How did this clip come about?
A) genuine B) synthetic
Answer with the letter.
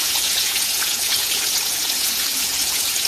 B